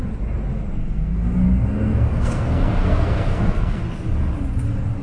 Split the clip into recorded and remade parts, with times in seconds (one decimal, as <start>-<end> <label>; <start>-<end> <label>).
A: 0.0-0.8 recorded; 0.8-3.8 remade; 3.8-5.0 recorded